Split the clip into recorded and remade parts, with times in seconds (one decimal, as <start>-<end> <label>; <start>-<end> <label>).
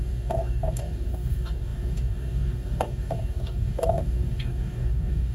0.0-5.3 remade